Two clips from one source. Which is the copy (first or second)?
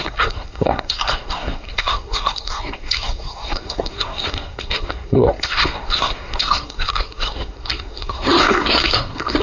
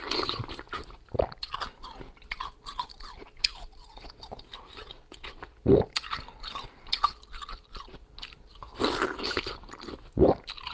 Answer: first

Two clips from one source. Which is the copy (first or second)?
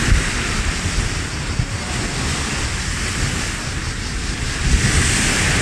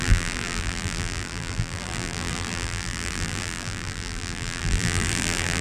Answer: second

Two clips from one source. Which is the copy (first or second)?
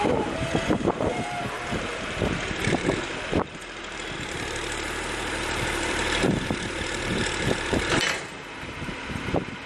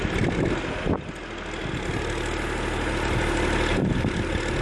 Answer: first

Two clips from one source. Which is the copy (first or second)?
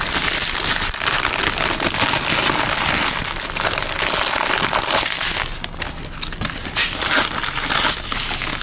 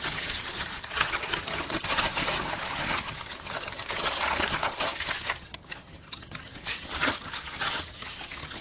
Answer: second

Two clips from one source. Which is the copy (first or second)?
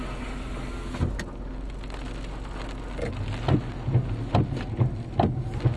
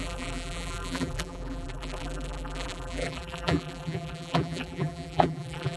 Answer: second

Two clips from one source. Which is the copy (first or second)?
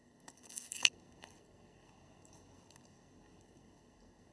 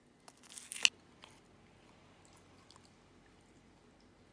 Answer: first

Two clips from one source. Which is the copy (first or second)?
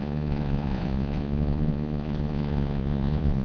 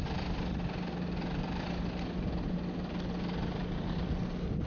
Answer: first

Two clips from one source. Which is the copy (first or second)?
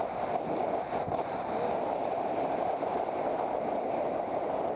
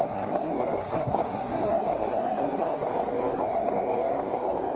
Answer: second